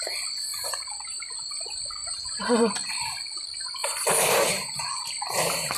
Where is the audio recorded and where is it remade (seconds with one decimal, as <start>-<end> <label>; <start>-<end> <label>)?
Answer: 0.0-0.5 recorded; 0.5-1.4 remade; 1.4-2.0 recorded; 2.0-2.7 remade; 2.7-3.8 recorded; 3.8-4.9 remade; 4.9-5.8 recorded